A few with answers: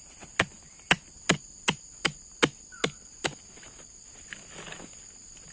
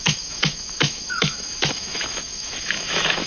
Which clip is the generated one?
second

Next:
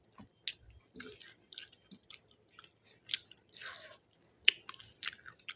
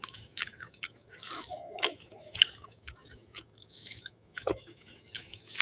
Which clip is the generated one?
second